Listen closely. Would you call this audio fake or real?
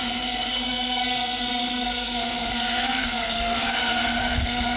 fake